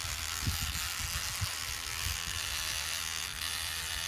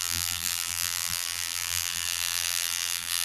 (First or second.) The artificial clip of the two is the second